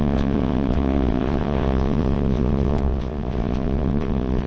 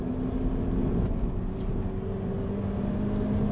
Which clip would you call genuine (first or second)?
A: second